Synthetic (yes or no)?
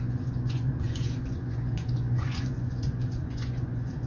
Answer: yes